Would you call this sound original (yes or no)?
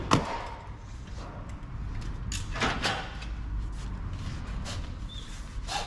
yes